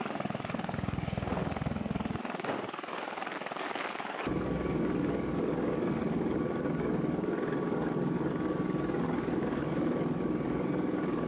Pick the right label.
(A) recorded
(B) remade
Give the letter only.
B